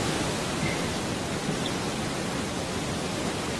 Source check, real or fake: real